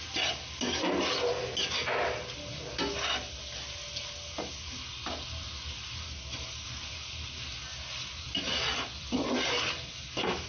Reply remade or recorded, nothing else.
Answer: recorded